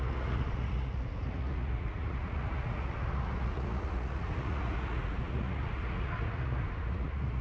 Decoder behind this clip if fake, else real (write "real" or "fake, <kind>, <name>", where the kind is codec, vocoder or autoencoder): fake, vocoder, Vocos